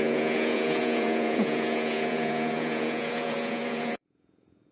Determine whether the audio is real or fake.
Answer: fake